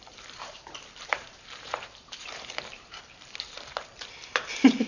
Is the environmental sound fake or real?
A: fake